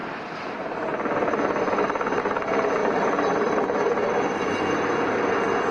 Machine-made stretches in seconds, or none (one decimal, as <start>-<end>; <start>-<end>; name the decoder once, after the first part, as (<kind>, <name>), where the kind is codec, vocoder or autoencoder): 2.8-4.6 (vocoder, BigVGAN v2)